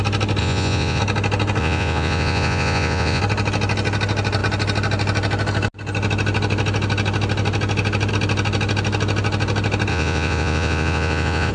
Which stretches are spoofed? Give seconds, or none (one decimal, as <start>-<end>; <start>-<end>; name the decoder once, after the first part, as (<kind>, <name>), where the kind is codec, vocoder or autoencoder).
0.4-1.0 (vocoder, Vocos); 1.6-3.2; 9.9-11.5